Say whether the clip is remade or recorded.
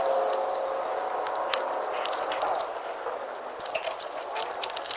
recorded